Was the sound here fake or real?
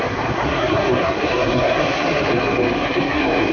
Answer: fake